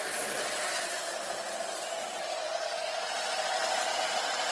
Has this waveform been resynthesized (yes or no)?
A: no